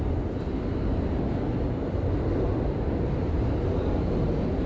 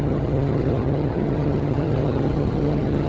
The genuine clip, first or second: first